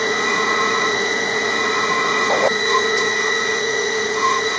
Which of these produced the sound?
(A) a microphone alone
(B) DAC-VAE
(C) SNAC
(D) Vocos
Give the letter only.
D